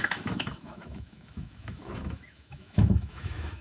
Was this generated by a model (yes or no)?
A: yes